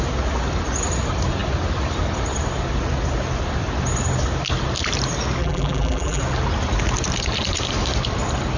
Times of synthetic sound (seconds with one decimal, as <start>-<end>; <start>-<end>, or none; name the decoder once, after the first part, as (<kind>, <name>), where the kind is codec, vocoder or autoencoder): 5.4-6.2 (vocoder, BigVGAN v2)

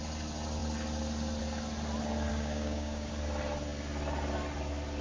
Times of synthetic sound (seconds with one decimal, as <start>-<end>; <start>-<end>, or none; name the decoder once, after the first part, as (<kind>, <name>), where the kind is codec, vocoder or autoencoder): 2.3-3.1 (codec, DAC)

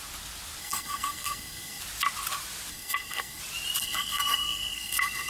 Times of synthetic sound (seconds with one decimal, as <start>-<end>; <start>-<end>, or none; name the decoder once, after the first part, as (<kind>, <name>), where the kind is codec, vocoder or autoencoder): 0.6-1.8 (codec, SNAC); 2.7-3.4; 3.8-5.3

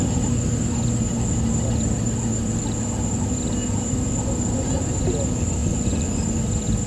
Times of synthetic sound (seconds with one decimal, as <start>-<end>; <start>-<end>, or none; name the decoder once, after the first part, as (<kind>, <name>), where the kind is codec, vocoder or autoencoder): 5.6-6.2 (vocoder, Vocos)

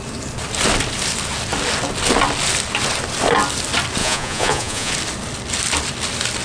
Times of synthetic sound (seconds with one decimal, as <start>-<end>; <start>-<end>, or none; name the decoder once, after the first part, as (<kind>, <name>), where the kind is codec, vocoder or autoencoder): 4.0-4.9 (vocoder, Vocos)

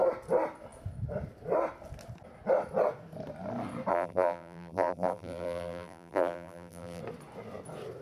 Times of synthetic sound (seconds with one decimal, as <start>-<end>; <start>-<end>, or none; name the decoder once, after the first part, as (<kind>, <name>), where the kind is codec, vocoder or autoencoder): 3.9-7.0 (vocoder, BigVGAN v2)